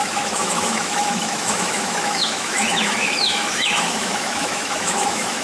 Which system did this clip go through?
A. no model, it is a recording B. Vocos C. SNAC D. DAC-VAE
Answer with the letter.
D